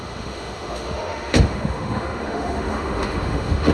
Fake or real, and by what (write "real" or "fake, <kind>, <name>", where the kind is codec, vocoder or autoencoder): fake, autoencoder, DAC-VAE